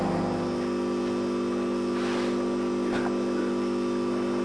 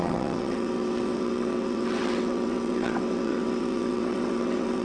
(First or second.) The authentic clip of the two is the first